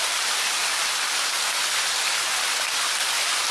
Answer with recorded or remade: recorded